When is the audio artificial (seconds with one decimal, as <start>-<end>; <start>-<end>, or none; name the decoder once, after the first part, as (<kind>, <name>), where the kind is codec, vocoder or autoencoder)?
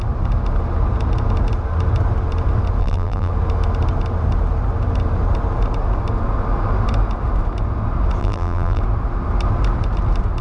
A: 2.8-3.3 (vocoder, BigVGAN v2); 8.2-8.8